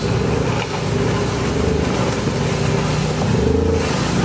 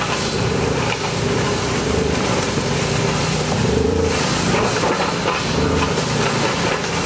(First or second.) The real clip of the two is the first